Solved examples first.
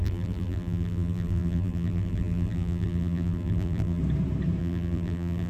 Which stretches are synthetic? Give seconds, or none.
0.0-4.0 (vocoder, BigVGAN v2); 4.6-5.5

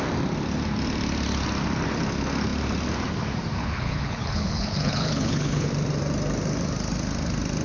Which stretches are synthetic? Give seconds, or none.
3.6-5.7 (codec, HILCodec)